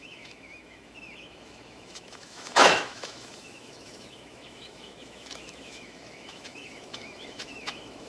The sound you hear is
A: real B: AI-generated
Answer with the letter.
B